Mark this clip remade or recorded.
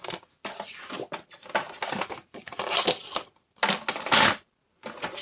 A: recorded